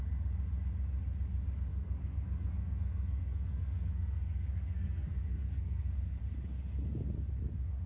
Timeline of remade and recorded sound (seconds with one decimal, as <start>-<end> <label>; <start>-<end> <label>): 0.0-1.7 recorded; 1.7-6.2 remade; 6.2-7.9 recorded